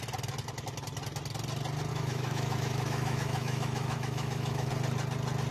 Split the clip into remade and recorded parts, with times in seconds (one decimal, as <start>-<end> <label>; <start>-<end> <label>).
0.0-1.9 recorded; 1.9-4.7 remade; 4.7-5.5 recorded